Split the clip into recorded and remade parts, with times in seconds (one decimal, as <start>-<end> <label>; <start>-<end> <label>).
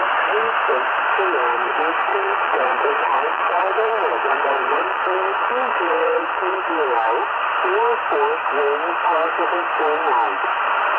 0.0-2.1 recorded; 2.1-6.6 remade; 6.6-11.0 recorded